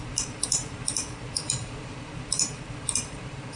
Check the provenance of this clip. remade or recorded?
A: remade